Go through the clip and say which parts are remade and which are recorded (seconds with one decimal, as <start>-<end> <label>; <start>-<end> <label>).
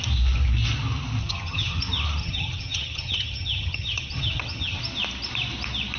0.0-1.2 recorded; 1.2-1.8 remade; 1.8-2.2 recorded; 2.2-4.8 remade; 4.8-6.0 recorded